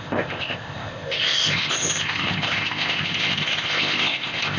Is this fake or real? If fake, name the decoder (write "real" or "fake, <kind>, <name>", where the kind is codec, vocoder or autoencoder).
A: fake, codec, ZipCodec